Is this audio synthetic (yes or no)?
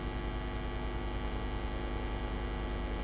no